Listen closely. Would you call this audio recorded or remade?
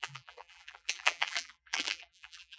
remade